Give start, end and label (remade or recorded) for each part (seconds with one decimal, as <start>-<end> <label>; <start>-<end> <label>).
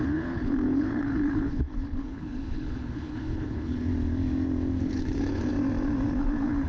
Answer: 0.0-3.9 remade; 3.9-4.8 recorded; 4.8-5.5 remade; 5.5-6.2 recorded; 6.2-6.7 remade